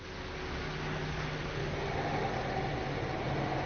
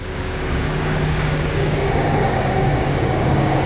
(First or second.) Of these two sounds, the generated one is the second